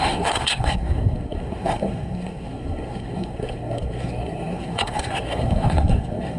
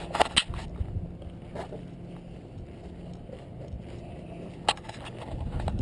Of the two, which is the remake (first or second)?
first